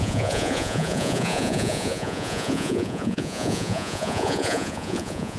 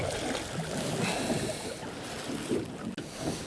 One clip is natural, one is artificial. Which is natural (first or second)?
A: second